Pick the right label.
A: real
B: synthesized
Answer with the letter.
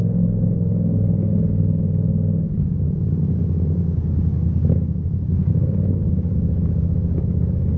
B